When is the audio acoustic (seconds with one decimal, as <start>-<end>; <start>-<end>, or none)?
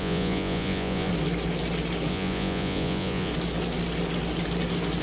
1.1-2.1; 3.3-5.0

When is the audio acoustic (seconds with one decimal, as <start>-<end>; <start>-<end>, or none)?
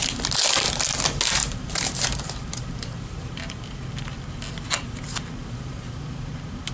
0.0-1.4; 3.3-5.4; 6.3-6.7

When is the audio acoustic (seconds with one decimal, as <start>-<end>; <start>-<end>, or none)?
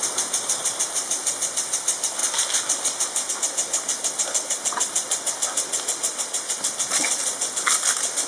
0.0-8.3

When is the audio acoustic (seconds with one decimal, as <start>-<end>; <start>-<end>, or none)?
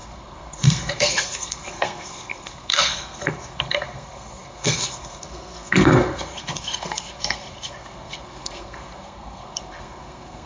none